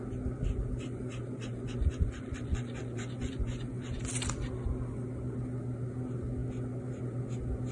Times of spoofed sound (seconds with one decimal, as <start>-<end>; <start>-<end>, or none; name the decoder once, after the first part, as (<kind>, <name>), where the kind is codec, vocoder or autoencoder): 1.5-4.0 (vocoder, Vocos)

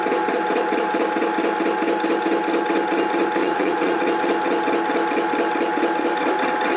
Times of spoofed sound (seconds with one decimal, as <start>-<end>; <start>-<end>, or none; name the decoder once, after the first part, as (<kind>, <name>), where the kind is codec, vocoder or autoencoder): 3.4-4.0 (vocoder, Vocos)

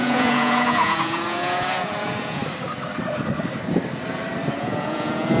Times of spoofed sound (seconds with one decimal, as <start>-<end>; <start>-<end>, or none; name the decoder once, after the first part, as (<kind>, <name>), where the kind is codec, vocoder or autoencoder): 0.0-2.4 (vocoder, Vocos); 4.6-5.4

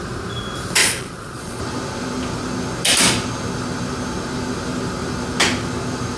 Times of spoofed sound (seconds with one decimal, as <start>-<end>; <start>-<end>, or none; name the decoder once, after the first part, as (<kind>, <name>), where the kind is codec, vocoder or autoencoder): 0.8-1.6 (vocoder, Vocos)